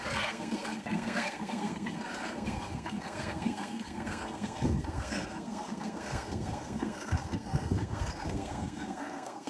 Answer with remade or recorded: remade